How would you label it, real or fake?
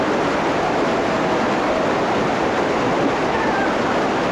real